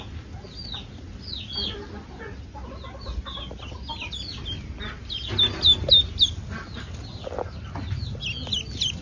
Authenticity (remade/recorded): recorded